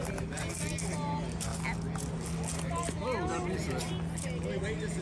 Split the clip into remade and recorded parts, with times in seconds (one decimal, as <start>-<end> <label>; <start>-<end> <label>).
0.0-5.0 recorded